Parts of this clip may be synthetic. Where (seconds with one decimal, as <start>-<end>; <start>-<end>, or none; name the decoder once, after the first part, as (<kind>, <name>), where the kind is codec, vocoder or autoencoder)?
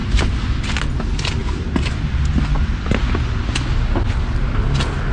none